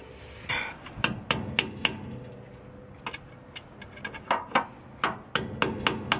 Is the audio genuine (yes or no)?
yes